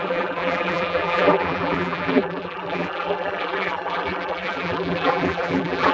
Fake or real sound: fake